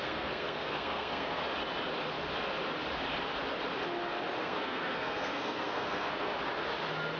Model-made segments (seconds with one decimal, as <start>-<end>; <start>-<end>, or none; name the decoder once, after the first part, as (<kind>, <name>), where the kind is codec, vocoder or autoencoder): 0.0-1.4 (codec, SNAC); 4.4-6.3